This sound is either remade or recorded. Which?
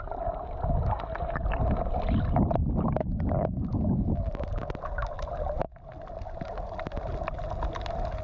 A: recorded